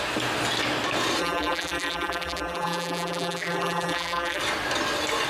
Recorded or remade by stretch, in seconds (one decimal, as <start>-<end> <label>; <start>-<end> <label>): 0.0-1.2 recorded; 1.2-4.4 remade; 4.4-5.3 recorded